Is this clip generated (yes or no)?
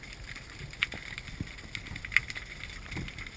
no